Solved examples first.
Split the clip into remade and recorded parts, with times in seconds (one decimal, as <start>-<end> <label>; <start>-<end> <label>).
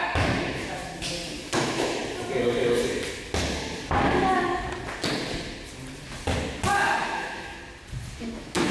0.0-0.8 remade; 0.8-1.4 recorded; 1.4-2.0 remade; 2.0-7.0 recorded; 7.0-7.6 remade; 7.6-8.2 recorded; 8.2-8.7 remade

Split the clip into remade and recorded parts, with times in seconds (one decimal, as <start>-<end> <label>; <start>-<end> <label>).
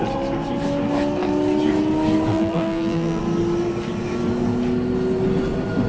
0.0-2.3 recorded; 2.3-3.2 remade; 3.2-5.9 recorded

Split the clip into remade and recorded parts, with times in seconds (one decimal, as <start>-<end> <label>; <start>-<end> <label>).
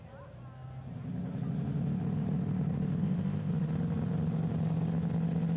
0.0-3.0 recorded; 3.0-3.5 remade; 3.5-5.6 recorded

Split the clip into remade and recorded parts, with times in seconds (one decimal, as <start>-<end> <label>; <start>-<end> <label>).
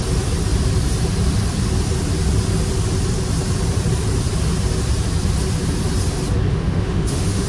0.0-6.5 recorded; 6.5-7.5 remade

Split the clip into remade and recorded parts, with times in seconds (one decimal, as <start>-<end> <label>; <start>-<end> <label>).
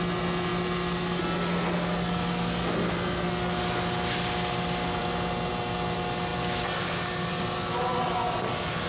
0.0-8.9 recorded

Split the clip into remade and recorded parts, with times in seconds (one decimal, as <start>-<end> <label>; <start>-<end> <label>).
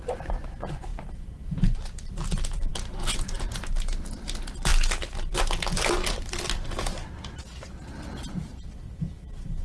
0.0-9.6 recorded